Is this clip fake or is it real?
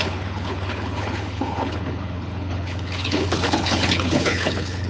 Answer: fake